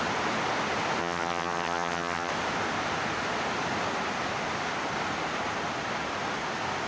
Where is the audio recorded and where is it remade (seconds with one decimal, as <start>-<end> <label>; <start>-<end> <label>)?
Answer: 0.0-1.0 recorded; 1.0-2.3 remade; 2.3-6.9 recorded